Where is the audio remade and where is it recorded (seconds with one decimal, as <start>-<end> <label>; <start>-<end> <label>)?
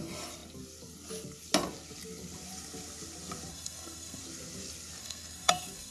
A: 0.0-3.5 recorded; 3.5-4.2 remade; 4.2-5.0 recorded; 5.0-5.9 remade